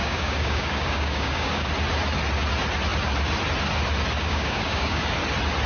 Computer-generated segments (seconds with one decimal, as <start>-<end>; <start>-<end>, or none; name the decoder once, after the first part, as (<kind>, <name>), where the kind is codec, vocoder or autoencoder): 0.0-1.7 (codec, DAC); 4.2-5.0